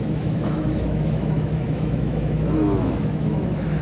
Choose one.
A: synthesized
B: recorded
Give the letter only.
A